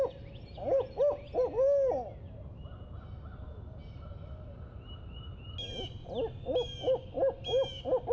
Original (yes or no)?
yes